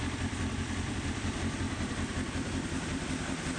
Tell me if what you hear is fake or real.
fake